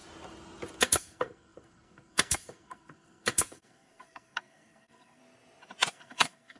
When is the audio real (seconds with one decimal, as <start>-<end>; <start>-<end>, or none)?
0.0-0.8; 5.2-5.9